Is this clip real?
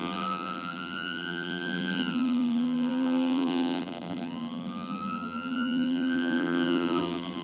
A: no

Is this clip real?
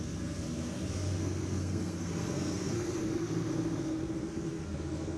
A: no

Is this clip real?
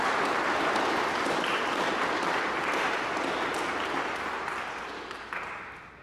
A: yes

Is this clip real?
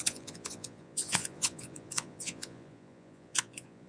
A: no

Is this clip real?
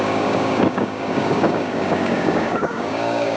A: no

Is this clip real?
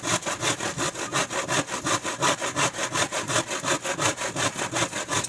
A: yes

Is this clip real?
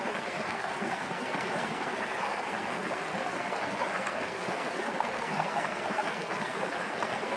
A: no